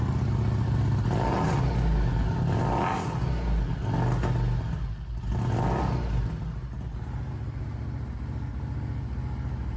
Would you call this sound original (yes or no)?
yes